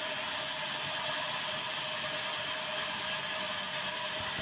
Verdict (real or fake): real